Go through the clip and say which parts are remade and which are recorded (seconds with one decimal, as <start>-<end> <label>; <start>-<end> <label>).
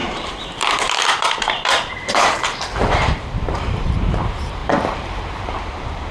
0.0-6.1 remade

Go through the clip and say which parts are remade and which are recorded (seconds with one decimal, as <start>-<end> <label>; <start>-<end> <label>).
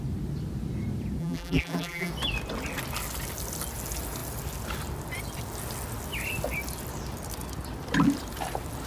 0.0-1.2 recorded; 1.2-2.1 remade; 2.1-8.9 recorded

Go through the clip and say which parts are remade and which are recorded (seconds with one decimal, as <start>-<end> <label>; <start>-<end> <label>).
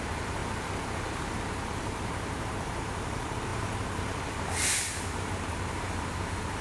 0.0-6.6 remade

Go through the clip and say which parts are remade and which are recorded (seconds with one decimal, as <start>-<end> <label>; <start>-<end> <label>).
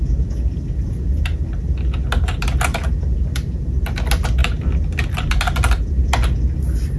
0.0-4.4 recorded; 4.4-5.3 remade; 5.3-7.0 recorded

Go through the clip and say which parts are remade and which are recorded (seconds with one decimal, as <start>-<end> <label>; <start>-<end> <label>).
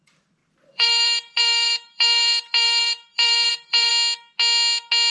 0.0-3.9 remade; 3.9-5.1 recorded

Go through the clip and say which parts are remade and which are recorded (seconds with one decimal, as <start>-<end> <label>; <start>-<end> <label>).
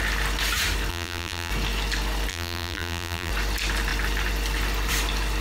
0.0-0.9 recorded; 0.9-1.5 remade; 1.5-2.3 recorded; 2.3-3.3 remade; 3.3-5.4 recorded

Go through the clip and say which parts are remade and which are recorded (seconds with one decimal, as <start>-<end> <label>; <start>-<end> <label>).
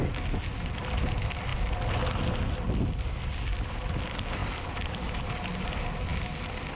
0.0-6.7 recorded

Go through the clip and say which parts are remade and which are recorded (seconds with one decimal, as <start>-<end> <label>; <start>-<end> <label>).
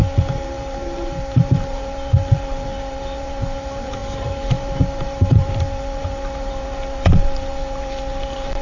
0.0-8.6 remade